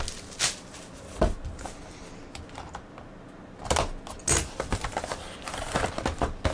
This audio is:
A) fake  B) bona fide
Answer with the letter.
B